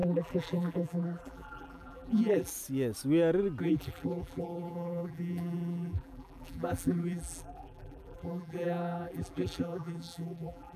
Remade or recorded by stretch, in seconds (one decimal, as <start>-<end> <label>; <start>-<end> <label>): 0.0-2.5 remade; 2.5-3.6 recorded; 3.6-10.8 remade